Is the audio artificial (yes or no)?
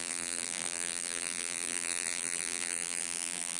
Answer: yes